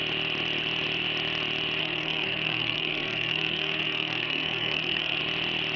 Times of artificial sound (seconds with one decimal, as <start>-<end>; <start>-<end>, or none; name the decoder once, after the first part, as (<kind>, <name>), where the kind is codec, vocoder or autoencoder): 1.8-5.2 (codec, SNAC)